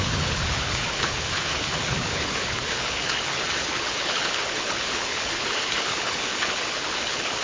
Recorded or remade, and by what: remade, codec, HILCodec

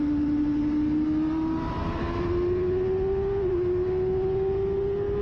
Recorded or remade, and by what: recorded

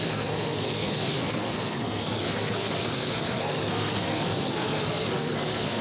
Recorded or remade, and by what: remade, codec, SNAC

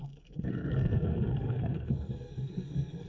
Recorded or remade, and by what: remade, codec, SNAC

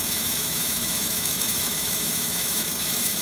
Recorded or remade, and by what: remade, autoencoder, DAC-VAE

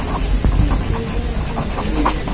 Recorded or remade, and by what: recorded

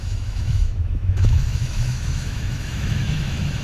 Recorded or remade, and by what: remade, autoencoder, DAC-VAE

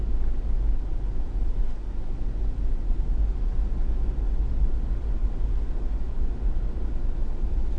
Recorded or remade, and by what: recorded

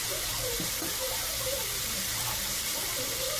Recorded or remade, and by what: remade, vocoder, BigVGAN v2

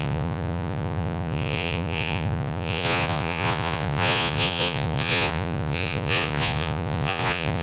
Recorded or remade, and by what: remade, vocoder, Vocos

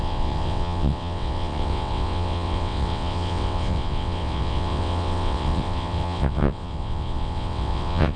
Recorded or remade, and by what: remade, vocoder, WaveNeXt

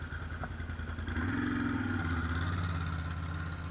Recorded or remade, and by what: recorded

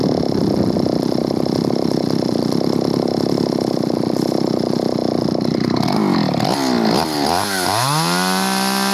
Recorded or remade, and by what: recorded